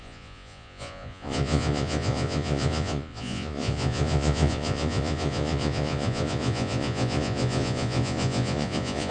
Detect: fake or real fake